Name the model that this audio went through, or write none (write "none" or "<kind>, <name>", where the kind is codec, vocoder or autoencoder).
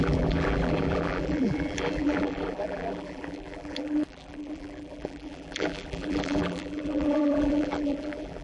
vocoder, BigVGAN v2